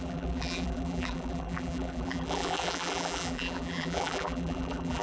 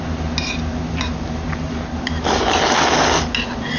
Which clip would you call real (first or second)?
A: second